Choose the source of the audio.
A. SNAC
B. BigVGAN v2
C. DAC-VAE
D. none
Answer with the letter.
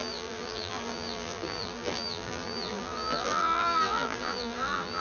B